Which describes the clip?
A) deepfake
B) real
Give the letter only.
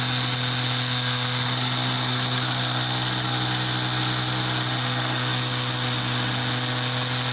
B